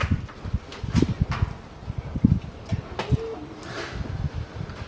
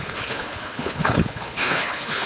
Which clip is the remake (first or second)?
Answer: second